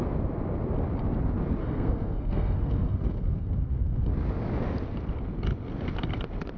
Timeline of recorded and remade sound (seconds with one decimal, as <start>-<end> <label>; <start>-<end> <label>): 0.0-1.6 recorded; 1.6-4.1 remade; 4.1-6.6 recorded